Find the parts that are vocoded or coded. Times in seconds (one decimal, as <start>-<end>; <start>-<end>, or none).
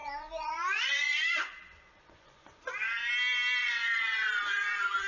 0.0-3.1; 3.6-5.1